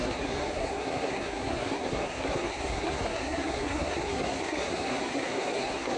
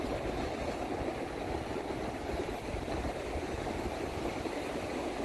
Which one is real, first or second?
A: second